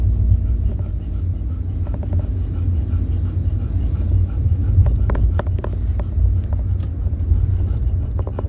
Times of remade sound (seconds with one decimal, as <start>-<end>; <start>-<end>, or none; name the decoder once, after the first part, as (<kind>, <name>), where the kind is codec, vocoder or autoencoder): none